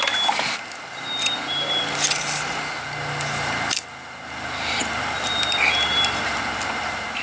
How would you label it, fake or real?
real